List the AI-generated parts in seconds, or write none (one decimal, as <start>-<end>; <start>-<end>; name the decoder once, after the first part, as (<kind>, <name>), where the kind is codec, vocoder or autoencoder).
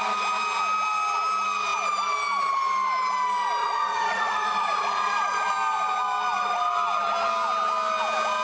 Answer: 3.6-5.5 (vocoder, Vocos)